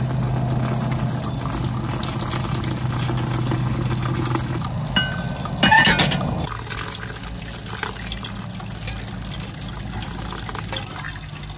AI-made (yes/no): no